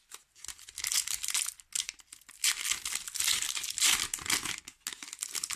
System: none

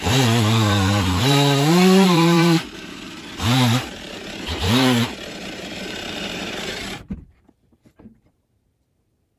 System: vocoder, BigVGAN v2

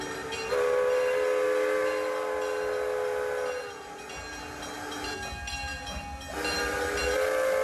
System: none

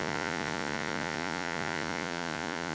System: vocoder, Vocos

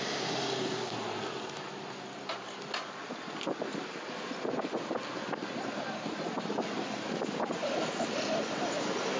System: none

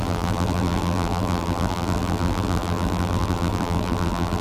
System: vocoder, BigVGAN v2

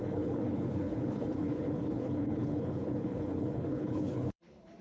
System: codec, HILCodec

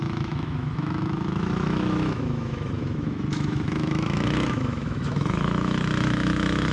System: autoencoder, DAC-VAE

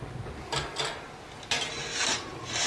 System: none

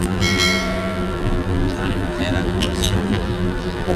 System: vocoder, BigVGAN v2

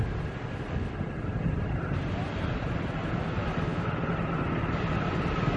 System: none